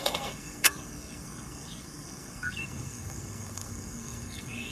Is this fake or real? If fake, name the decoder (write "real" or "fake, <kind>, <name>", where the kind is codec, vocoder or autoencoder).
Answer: fake, codec, SNAC